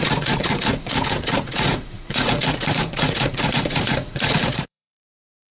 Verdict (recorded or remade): remade